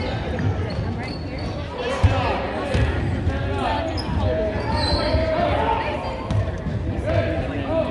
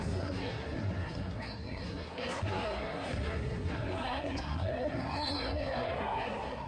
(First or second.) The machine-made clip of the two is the second